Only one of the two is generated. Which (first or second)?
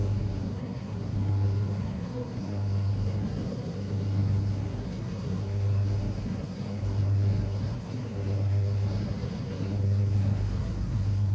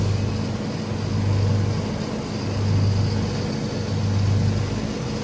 first